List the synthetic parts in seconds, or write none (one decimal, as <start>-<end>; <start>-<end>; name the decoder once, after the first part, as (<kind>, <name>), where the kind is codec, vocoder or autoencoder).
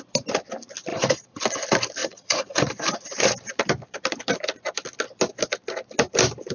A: 0.9-1.4 (vocoder, Vocos); 2.0-2.6